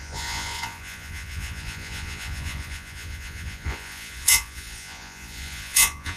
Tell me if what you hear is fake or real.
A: fake